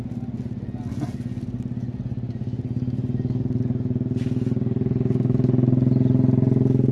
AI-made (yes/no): no